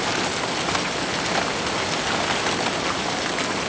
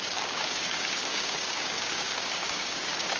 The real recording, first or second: first